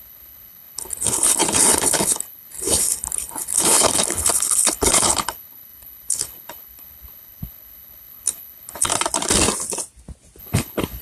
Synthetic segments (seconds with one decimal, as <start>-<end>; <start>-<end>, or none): 0.0-8.9; 10.4-11.0